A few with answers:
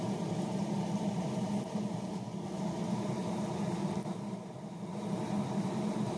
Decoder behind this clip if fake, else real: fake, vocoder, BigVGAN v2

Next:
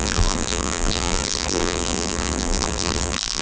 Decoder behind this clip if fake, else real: fake, vocoder, BigVGAN v2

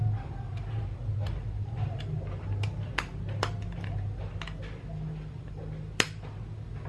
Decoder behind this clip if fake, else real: fake, vocoder, BigVGAN v2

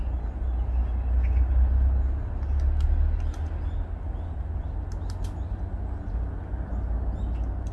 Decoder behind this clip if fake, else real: real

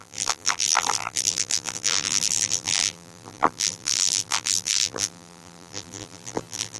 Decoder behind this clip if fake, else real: fake, vocoder, BigVGAN v2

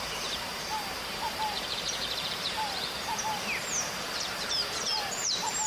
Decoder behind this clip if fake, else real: fake, vocoder, BigVGAN v2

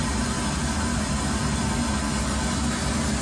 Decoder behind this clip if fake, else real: real